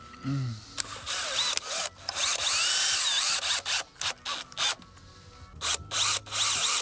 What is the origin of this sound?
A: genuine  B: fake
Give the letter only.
A